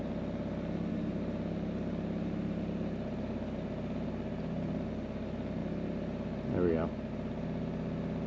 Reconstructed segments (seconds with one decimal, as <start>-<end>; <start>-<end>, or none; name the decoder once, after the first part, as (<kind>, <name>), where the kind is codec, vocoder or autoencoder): none